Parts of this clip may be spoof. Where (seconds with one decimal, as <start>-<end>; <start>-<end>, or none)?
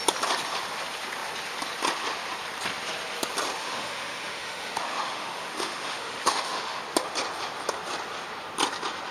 3.6-6.8